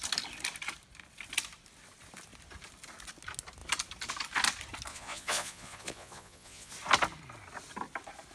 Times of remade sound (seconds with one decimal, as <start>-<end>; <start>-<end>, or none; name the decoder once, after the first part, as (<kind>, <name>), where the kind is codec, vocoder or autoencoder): 4.9-6.7 (vocoder, Vocos)